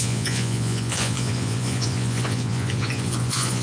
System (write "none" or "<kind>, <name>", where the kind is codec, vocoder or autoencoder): vocoder, Vocos